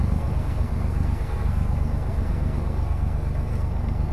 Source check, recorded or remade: remade